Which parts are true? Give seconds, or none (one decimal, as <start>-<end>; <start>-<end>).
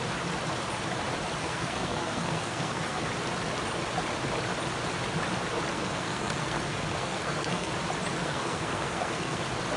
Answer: 0.0-1.4; 3.1-5.7; 7.7-8.2; 9.4-9.8